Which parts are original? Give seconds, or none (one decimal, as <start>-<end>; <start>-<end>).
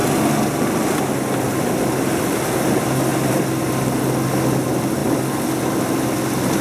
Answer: 0.0-6.6